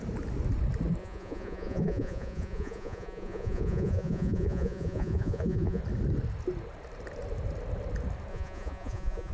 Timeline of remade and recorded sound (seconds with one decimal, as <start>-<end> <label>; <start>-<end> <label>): 0.0-1.0 recorded; 1.0-5.8 remade; 5.8-8.3 recorded; 8.3-9.3 remade